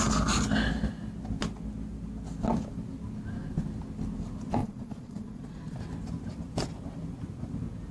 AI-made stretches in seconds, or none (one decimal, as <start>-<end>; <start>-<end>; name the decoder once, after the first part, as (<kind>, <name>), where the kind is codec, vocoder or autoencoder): 4.6-5.8 (vocoder, Vocos)